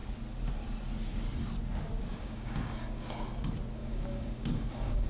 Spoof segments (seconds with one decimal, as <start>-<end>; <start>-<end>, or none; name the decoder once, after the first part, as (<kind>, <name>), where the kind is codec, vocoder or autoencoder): 2.1-3.1 (codec, DAC); 3.8-5.1